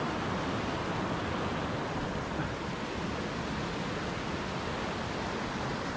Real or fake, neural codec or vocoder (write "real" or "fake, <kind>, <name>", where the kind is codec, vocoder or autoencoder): real